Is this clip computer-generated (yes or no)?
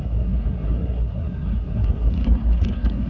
yes